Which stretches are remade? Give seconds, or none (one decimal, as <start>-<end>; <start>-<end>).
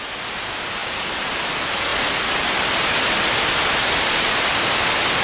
none